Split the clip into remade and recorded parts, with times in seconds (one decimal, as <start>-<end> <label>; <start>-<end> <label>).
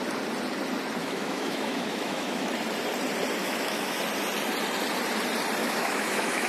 0.0-1.0 recorded; 1.0-2.5 remade; 2.5-3.4 recorded; 3.4-4.0 remade; 4.0-5.6 recorded; 5.6-6.5 remade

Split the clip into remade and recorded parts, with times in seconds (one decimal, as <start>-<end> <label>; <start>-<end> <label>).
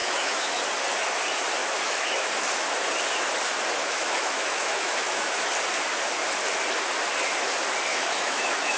0.0-0.6 remade; 0.6-1.6 recorded; 1.6-2.3 remade; 2.3-3.8 recorded; 3.8-5.5 remade; 5.5-7.9 recorded; 7.9-8.8 remade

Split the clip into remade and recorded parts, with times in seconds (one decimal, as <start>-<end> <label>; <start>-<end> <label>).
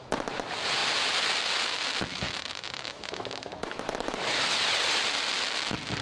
0.0-2.1 recorded; 2.1-3.8 remade; 3.8-6.0 recorded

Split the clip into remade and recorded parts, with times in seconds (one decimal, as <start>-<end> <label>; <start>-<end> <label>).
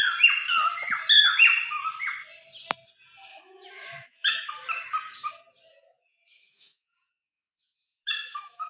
0.0-3.3 recorded; 3.3-4.5 remade; 4.5-5.7 recorded; 5.7-8.7 remade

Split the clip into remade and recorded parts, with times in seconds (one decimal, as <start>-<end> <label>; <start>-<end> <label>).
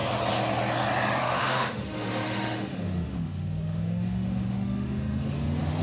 0.0-1.2 recorded; 1.2-5.8 remade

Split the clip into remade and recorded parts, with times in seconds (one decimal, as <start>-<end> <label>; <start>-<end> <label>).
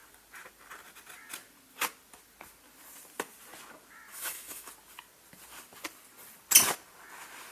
0.0-4.1 recorded; 4.1-4.7 remade; 4.7-7.5 recorded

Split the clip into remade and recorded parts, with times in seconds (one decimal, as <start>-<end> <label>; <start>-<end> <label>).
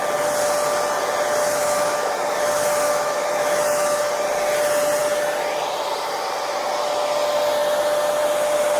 0.0-1.4 recorded; 1.4-4.1 remade; 4.1-8.8 recorded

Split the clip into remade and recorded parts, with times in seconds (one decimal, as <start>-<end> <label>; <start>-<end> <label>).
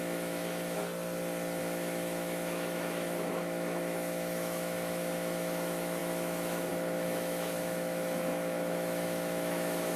0.0-0.8 remade; 0.8-1.6 recorded; 1.6-10.0 remade